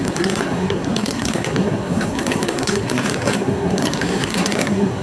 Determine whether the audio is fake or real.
fake